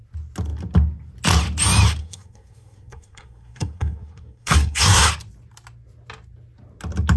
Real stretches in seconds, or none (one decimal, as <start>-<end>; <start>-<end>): 0.0-2.0; 5.1-7.2